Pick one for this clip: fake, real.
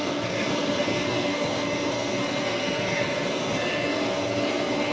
fake